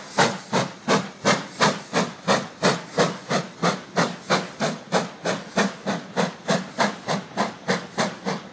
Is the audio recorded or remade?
recorded